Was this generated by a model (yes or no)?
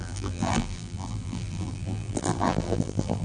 yes